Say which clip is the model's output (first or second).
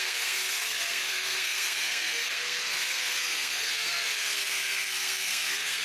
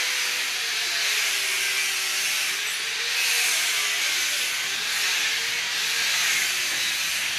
first